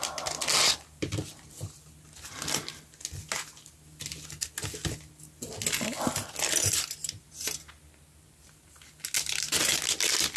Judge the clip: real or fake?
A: real